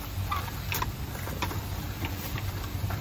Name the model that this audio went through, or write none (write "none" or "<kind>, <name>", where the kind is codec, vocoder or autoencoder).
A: vocoder, BigVGAN v2